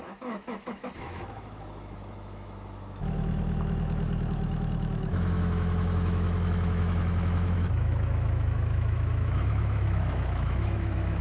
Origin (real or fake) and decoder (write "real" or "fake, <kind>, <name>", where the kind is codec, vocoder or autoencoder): fake, autoencoder, DAC-VAE